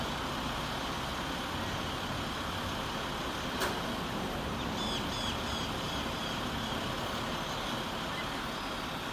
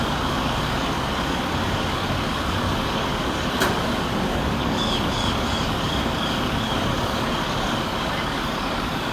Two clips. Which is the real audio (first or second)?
first